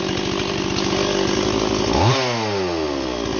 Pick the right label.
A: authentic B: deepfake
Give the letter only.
A